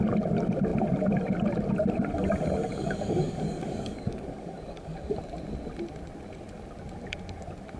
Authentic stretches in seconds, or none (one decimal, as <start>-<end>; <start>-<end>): 0.0-2.7; 5.2-7.8